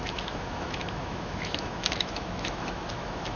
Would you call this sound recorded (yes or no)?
no